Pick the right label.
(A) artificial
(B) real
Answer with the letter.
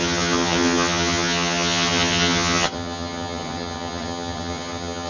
A